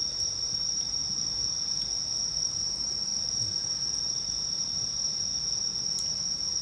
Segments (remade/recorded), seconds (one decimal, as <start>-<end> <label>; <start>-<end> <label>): 0.0-1.0 remade; 1.0-2.6 recorded; 2.6-3.1 remade; 3.1-4.0 recorded; 4.0-5.3 remade; 5.3-6.6 recorded